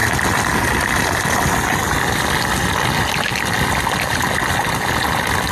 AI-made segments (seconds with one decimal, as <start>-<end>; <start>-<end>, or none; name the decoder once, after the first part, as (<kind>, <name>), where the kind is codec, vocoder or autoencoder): none